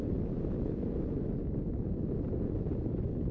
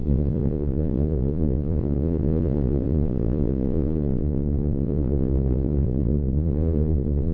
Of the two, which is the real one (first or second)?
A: first